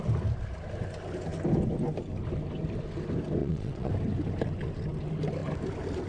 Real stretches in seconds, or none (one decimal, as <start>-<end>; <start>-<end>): 0.0-3.4; 3.9-6.1